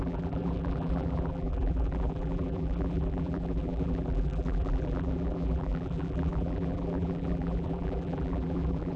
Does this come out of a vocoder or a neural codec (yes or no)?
yes